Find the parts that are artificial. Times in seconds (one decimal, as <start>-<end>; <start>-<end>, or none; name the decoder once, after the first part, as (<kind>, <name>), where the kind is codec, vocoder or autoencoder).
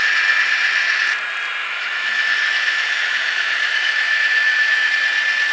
1.6-4.9 (autoencoder, DAC-VAE)